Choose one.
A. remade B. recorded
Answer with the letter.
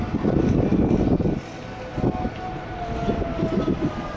B